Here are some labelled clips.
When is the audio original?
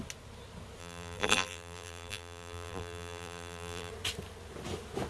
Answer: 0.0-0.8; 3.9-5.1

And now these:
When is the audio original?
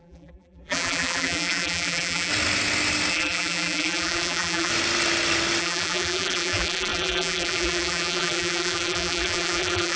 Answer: 2.3-3.1; 4.7-5.6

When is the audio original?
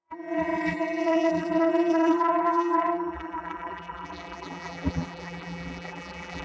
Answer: none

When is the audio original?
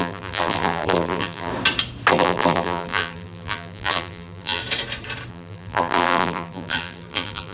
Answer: 1.5-2.1; 4.6-5.3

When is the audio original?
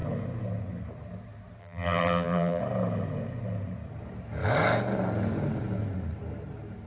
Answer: 0.0-1.6; 2.6-6.9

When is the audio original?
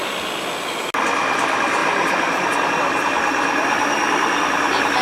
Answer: 0.0-1.8; 2.6-5.0